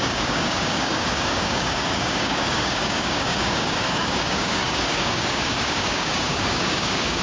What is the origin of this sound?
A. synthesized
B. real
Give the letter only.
A